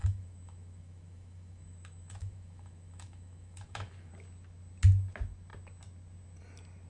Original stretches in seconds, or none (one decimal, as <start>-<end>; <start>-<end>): 4.1-6.9